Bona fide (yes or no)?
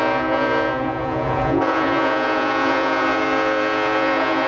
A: no